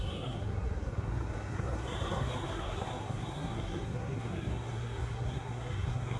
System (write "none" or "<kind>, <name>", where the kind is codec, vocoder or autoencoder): codec, SNAC